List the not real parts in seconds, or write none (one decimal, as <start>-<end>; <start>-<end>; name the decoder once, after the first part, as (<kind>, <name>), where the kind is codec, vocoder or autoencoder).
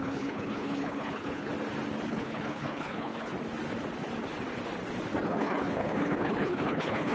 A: 0.0-1.5 (codec, HILCodec); 2.1-3.3; 5.2-7.1